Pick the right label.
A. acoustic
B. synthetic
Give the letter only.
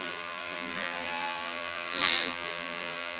B